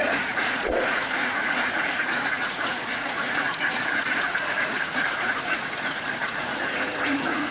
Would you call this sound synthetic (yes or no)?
yes